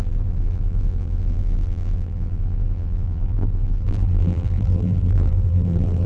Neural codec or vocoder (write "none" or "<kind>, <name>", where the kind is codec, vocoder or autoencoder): vocoder, BigVGAN v2